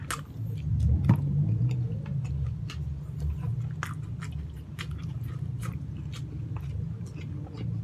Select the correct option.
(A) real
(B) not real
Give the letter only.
A